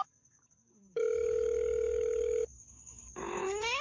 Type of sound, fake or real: fake